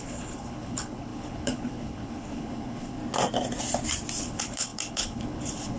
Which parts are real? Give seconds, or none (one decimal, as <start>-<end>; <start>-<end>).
3.0-4.2